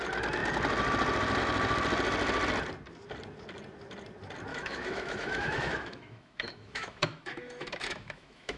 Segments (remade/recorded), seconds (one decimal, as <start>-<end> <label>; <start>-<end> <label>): 0.0-4.5 recorded; 4.5-8.6 remade